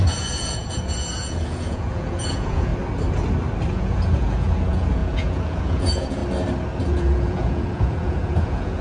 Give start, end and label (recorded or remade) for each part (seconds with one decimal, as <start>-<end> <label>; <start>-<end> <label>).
0.0-2.7 remade; 2.7-3.7 recorded; 3.7-6.2 remade; 6.2-6.9 recorded; 6.9-8.8 remade